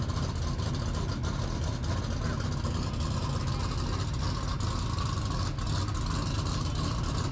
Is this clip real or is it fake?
real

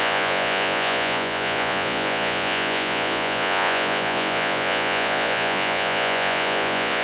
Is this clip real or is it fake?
fake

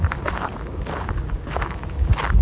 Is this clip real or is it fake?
fake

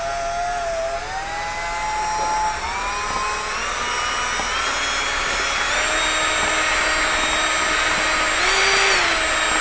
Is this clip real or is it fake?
real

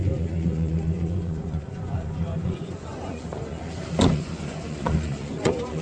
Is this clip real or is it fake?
fake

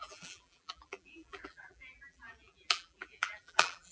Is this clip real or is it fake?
fake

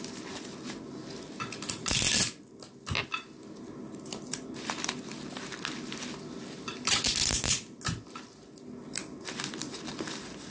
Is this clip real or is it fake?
real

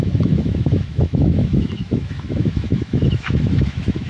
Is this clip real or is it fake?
fake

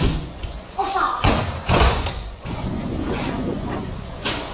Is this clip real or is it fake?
fake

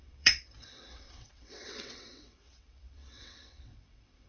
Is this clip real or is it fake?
fake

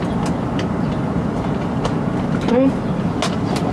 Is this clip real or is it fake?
real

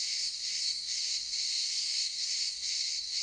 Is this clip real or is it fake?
fake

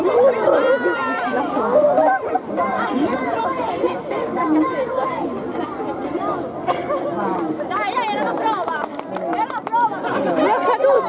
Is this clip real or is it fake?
real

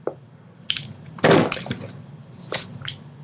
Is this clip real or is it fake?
real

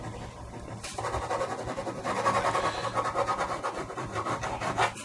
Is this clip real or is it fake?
real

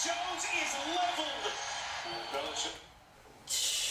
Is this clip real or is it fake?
real